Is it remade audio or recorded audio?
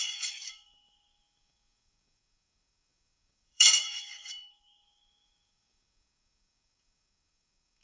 remade